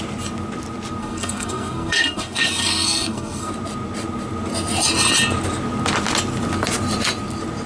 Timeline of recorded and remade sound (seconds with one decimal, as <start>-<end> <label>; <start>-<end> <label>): 0.0-1.0 recorded; 1.0-3.5 remade; 3.5-7.7 recorded